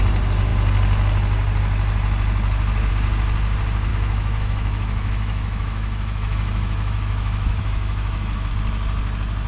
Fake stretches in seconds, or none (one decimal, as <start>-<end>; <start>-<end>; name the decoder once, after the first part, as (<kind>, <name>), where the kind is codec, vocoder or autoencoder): 3.9-8.5 (autoencoder, DAC-VAE)